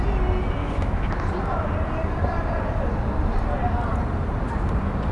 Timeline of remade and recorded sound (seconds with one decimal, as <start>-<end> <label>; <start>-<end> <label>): 0.0-0.6 recorded; 0.6-1.1 remade; 1.1-5.1 recorded